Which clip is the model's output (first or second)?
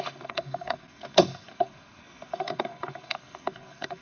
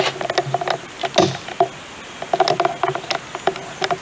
first